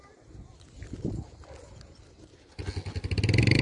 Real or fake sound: real